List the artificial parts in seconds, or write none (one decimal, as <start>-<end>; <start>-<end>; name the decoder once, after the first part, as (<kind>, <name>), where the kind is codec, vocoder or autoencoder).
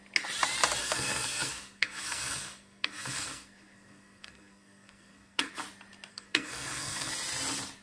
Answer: 0.8-5.5 (codec, SNAC); 6.1-7.1